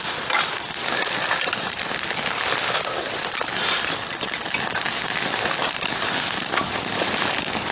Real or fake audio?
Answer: real